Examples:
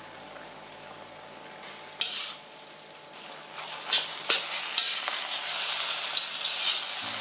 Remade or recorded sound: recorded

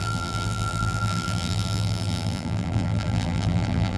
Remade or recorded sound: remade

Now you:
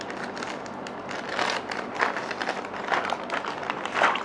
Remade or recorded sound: recorded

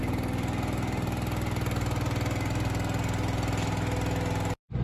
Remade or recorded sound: recorded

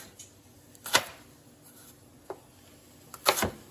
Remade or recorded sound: recorded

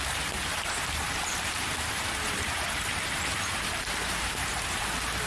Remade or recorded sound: remade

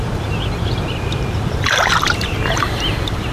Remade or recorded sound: remade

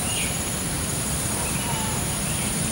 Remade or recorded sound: remade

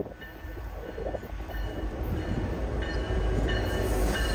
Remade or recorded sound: remade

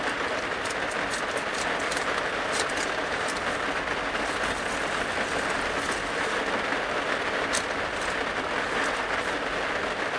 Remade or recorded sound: recorded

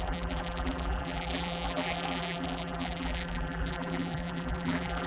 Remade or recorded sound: remade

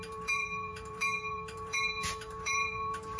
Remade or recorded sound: remade